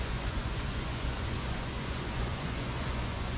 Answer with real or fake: fake